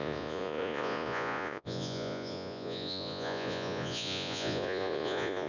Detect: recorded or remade remade